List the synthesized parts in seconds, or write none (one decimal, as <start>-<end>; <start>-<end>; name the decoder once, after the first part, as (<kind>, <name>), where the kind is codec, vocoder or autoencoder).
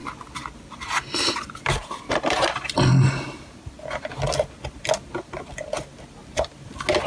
0.0-2.4 (vocoder, BigVGAN v2)